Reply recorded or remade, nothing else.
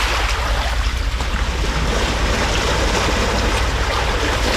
recorded